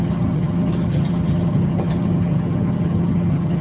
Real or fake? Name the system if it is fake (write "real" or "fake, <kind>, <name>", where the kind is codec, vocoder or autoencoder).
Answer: fake, vocoder, HiFi-GAN